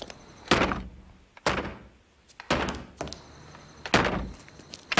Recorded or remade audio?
recorded